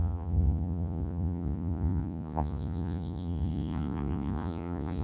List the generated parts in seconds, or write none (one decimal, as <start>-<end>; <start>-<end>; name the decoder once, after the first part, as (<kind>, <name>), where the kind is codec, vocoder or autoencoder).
0.0-5.0 (vocoder, Vocos)